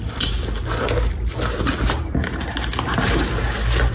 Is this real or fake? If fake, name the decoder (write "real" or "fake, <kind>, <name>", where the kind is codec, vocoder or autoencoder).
real